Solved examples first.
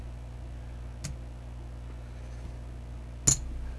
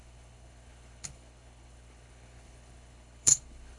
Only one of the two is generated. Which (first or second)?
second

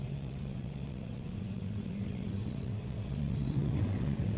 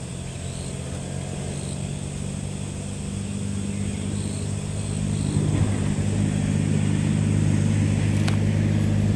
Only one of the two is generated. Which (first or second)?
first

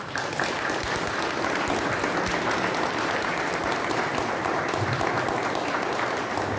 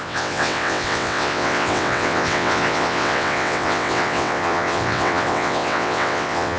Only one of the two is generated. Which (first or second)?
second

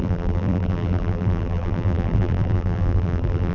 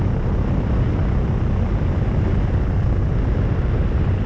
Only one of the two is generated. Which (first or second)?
first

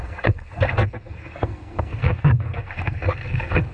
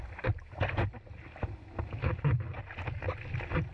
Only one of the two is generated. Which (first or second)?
first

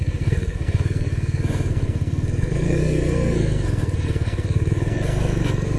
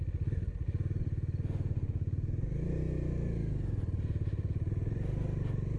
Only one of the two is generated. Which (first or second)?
first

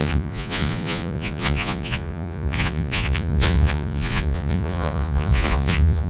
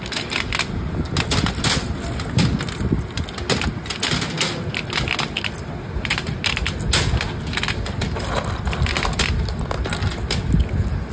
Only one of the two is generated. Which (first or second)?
first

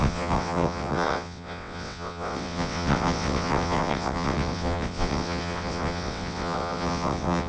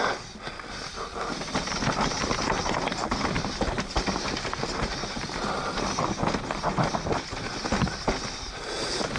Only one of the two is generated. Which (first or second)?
first